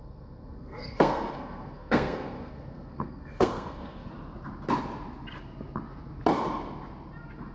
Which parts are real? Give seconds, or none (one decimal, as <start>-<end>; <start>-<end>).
4.1-7.5